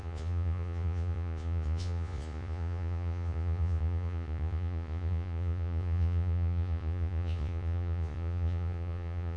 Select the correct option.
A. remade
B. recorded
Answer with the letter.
A